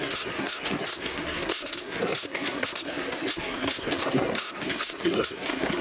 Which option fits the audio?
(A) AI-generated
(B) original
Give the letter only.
A